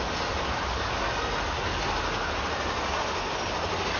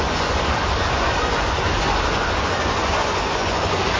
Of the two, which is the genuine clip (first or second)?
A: first